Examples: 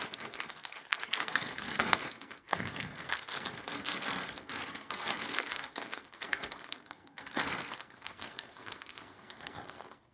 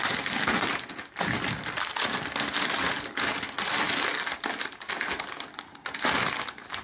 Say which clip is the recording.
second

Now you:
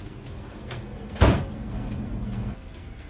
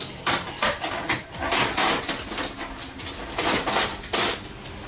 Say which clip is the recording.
second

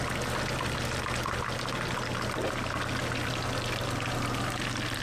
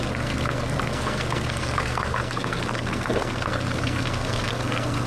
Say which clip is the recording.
first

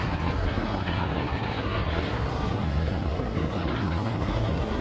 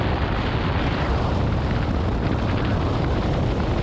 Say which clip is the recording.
second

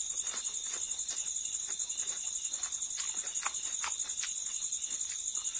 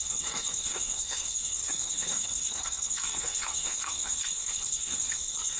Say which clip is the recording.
first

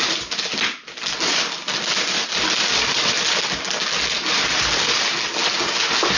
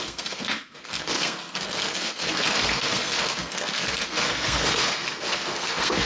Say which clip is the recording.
first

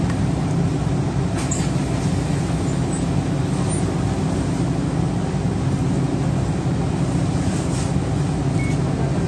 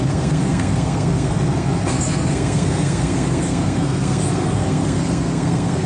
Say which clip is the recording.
first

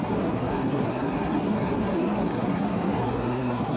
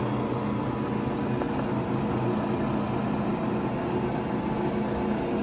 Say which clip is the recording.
second